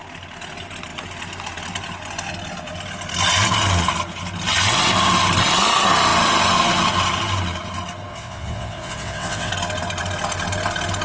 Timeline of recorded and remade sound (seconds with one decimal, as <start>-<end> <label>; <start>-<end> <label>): 0.0-8.1 recorded; 8.1-9.5 remade; 9.5-11.0 recorded